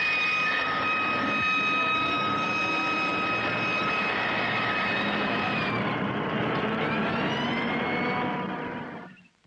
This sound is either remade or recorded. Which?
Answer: remade